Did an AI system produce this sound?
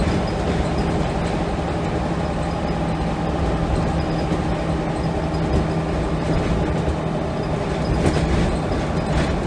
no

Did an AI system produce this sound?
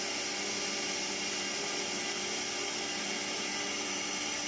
no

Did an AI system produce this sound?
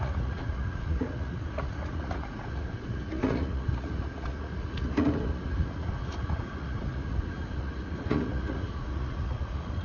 yes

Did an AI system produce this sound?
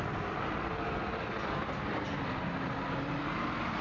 no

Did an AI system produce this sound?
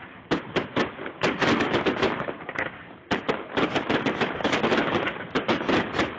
no